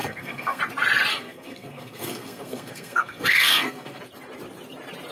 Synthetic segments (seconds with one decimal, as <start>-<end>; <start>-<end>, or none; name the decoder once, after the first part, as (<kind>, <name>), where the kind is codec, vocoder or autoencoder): 0.0-0.6 (codec, SNAC); 1.1-4.0

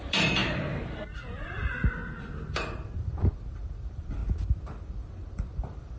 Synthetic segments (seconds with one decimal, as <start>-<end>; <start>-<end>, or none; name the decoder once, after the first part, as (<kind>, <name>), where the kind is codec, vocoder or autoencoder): 0.0-0.4 (vocoder, BigVGAN v2); 1.4-2.0; 2.5-4.2; 4.8-6.0

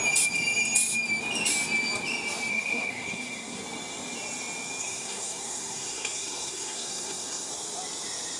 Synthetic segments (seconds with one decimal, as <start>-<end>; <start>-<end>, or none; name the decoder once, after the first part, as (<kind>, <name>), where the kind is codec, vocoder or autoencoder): 2.5-3.6 (codec, SNAC); 4.8-7.5

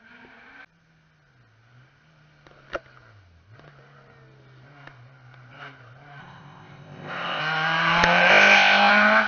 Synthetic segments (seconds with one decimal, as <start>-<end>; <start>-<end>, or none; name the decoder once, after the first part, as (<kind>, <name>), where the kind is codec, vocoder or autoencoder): 6.2-7.4 (codec, ZipCodec); 8.3-8.9